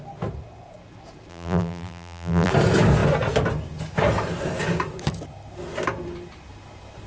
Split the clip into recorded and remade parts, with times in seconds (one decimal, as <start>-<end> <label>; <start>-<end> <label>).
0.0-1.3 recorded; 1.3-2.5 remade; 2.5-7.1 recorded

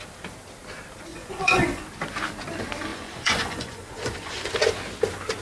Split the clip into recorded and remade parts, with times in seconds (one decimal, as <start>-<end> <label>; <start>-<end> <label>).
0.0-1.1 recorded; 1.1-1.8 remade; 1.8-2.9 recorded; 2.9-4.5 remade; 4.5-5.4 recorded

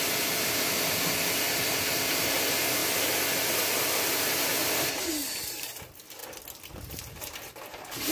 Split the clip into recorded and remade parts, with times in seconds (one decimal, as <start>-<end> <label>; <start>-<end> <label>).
0.0-2.8 remade; 2.8-4.1 recorded; 4.1-4.5 remade; 4.5-5.0 recorded; 5.0-6.2 remade; 6.2-6.9 recorded; 6.9-8.1 remade

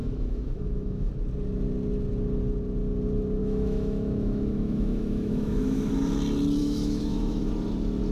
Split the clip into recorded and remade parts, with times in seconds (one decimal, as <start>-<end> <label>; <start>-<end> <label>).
0.0-1.1 remade; 1.1-3.4 recorded; 3.4-5.9 remade; 5.9-6.6 recorded; 6.6-7.5 remade; 7.5-8.1 recorded

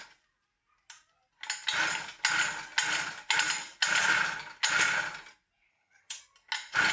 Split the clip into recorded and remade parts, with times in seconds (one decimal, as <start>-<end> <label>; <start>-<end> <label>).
0.0-5.7 recorded; 5.7-6.2 remade; 6.2-6.9 recorded

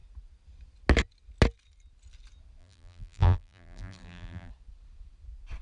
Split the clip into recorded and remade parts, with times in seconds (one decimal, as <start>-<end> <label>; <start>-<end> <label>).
0.0-2.6 recorded; 2.6-4.5 remade; 4.5-5.6 recorded

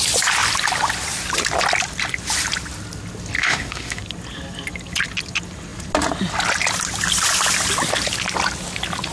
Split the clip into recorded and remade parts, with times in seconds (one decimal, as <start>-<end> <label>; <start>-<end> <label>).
0.0-3.4 recorded; 3.4-4.0 remade; 4.0-9.1 recorded